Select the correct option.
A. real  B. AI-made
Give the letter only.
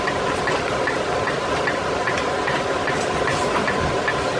A